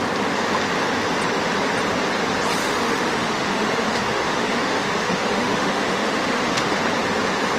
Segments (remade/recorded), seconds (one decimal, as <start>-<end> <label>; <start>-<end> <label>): 0.0-2.6 recorded; 2.6-6.8 remade; 6.8-7.6 recorded